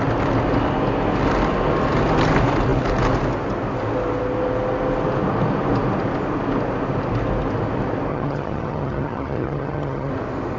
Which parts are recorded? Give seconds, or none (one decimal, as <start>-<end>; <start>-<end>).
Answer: 0.0-8.1; 10.1-10.6